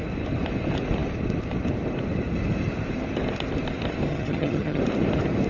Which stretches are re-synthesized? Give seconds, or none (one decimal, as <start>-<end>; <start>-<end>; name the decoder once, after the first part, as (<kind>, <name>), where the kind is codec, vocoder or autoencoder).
4.1-4.8 (vocoder, HiFi-GAN)